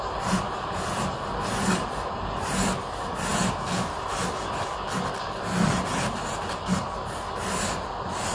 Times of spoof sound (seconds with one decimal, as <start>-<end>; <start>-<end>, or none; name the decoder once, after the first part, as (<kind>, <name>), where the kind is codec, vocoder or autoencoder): none